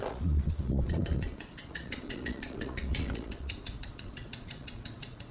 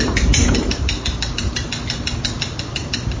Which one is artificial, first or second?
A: first